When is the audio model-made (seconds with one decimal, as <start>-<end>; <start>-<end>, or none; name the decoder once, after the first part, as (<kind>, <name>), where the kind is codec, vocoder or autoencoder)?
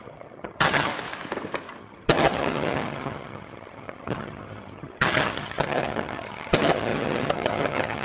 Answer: 0.0-0.9 (vocoder, HiFi-GAN); 1.8-8.0